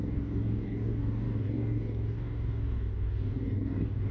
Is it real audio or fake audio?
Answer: fake